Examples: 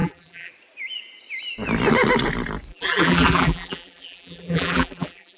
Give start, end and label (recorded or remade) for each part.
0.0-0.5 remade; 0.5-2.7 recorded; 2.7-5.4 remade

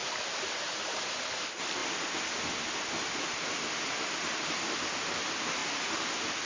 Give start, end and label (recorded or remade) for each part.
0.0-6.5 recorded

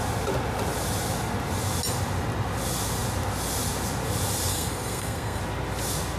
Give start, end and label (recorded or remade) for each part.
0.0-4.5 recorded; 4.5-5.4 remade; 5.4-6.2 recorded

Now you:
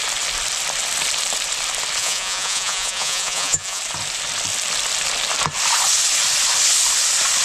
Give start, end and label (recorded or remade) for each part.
0.0-2.0 recorded; 2.0-3.8 remade; 3.8-7.4 recorded